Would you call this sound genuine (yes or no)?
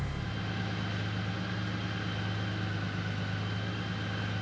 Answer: yes